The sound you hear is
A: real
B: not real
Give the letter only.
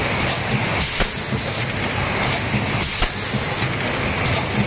A